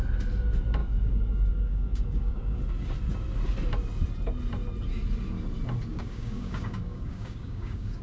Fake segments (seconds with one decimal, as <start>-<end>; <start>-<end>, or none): 0.8-2.6; 5.9-8.0